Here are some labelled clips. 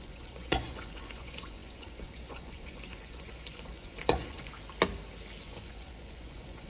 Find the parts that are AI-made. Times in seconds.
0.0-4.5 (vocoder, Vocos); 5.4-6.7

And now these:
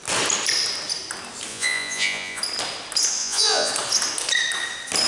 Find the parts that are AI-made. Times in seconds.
1.5-2.4 (vocoder, Vocos); 3.2-3.7

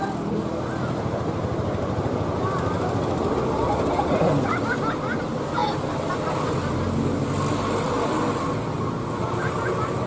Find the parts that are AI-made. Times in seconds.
none

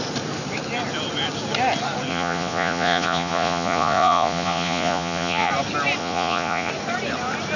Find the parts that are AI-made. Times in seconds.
2.1-5.5 (vocoder, Vocos); 6.0-6.7